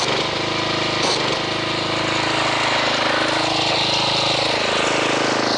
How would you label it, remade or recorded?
recorded